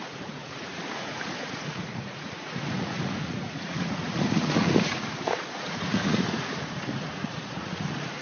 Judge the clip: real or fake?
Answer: fake